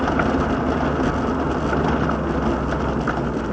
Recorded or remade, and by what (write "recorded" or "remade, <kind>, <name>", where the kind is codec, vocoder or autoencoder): recorded